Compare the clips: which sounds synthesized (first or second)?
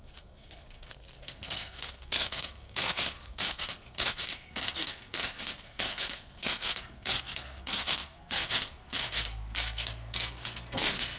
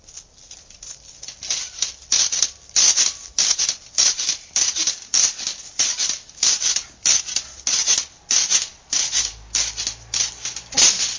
first